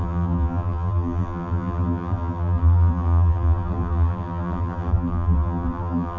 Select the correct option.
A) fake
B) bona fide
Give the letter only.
A